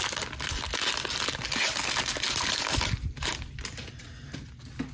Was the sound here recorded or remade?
recorded